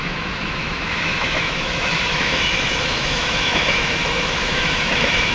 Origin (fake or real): fake